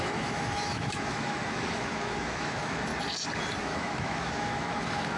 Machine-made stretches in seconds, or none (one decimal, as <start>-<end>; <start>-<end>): 0.0-2.9; 3.6-5.2